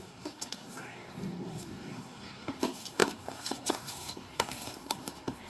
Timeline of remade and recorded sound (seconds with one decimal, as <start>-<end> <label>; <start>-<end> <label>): 0.0-5.5 remade